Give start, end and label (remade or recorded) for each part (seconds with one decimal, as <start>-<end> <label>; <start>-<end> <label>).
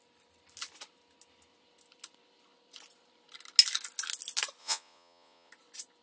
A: 0.0-4.6 recorded; 4.6-5.5 remade; 5.5-6.0 recorded